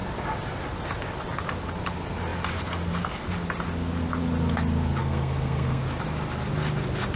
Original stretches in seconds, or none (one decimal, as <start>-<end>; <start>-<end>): 0.0-5.0; 5.8-7.2